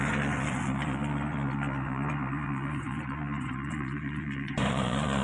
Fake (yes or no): yes